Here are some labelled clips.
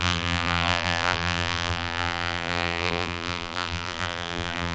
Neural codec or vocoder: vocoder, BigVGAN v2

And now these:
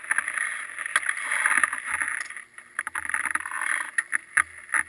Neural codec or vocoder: none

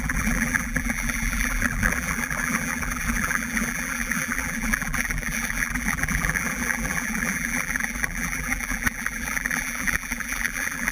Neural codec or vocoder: vocoder, BigVGAN v2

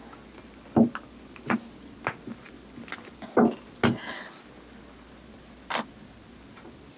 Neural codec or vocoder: none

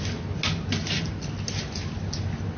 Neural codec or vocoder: none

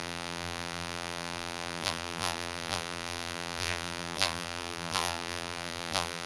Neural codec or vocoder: vocoder, BigVGAN v2